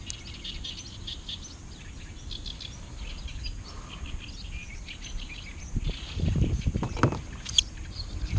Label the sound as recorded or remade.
recorded